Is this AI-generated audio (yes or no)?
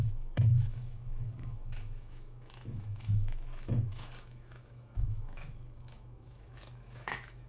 yes